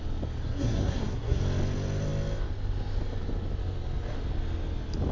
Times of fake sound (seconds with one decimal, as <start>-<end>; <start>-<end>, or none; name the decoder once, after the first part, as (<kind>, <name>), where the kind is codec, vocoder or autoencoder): 0.4-1.4 (codec, SNAC)